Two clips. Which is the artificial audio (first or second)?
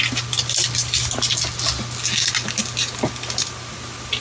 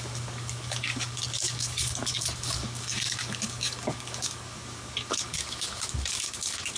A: second